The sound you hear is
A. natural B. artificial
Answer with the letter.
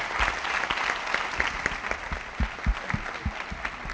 A